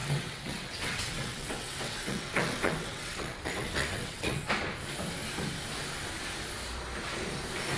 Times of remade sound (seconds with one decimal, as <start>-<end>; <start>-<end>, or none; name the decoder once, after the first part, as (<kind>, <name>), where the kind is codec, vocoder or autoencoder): 0.0-4.5 (vocoder, WaveNeXt)